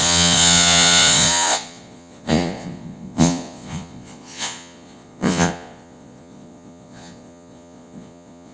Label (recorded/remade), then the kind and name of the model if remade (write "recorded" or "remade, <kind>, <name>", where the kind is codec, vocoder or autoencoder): remade, vocoder, Vocos